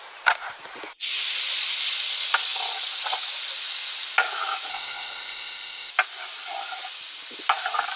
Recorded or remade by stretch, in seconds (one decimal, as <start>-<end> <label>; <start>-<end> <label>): 0.0-4.7 recorded; 4.7-5.9 remade; 5.9-8.0 recorded